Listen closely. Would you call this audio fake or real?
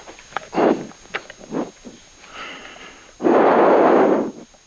real